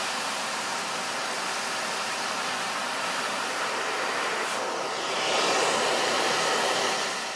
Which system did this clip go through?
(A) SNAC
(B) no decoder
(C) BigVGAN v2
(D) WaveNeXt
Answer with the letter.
C